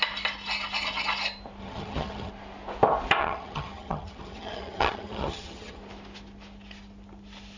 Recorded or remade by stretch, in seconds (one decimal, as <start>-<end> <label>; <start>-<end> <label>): 0.0-1.6 recorded; 1.6-2.3 remade; 2.3-3.2 recorded; 3.2-5.8 remade; 5.8-7.6 recorded